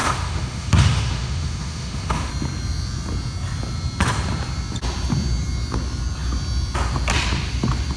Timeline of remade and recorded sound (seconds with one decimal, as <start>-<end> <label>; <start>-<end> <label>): 0.0-2.3 remade; 2.3-8.0 recorded